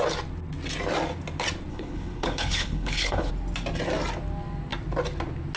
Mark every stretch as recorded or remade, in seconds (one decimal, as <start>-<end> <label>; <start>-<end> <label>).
0.0-1.7 recorded; 1.7-3.3 remade; 3.3-5.6 recorded

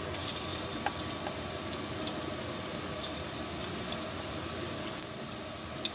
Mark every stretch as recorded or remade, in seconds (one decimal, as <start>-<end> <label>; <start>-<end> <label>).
0.0-5.9 recorded

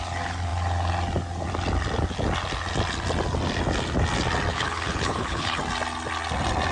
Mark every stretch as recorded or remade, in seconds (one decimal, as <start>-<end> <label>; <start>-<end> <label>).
0.0-4.5 recorded; 4.5-5.6 remade; 5.6-6.7 recorded